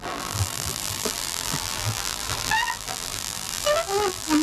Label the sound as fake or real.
fake